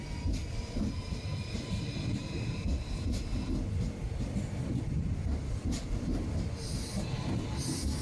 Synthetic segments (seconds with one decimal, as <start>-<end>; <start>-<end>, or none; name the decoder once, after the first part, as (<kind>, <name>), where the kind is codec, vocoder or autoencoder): none